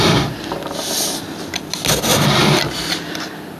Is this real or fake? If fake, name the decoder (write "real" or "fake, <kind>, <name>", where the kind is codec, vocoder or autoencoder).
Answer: real